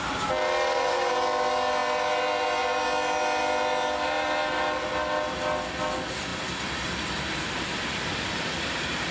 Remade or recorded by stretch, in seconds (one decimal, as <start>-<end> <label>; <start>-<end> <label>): 0.0-9.1 recorded